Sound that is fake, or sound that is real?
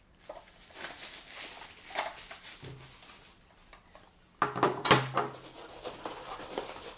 real